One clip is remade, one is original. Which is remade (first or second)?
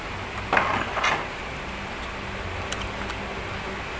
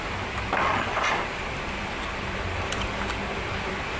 second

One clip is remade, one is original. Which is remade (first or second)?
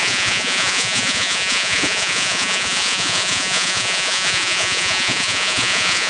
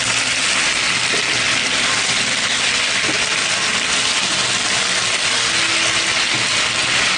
first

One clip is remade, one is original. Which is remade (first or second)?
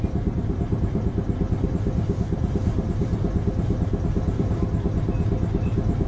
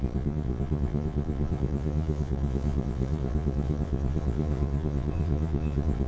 second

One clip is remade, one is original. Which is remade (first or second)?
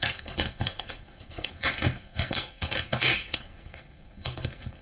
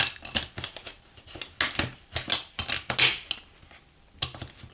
first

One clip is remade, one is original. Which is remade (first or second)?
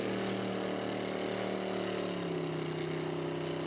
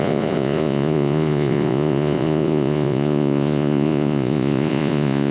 second